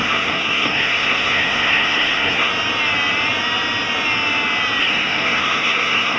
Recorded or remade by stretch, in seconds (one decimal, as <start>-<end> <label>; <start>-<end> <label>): 0.0-2.5 remade; 2.5-4.8 recorded; 4.8-6.2 remade